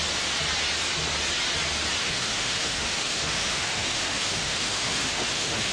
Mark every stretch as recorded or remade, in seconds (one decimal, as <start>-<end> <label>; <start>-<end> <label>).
0.0-2.0 recorded; 2.0-5.7 remade